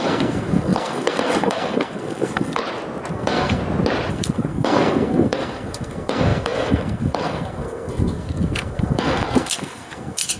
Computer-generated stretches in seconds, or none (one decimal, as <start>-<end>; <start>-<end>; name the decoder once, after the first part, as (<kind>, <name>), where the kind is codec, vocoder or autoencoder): 0.0-2.6 (codec, SNAC); 3.1-3.6; 4.1-10.4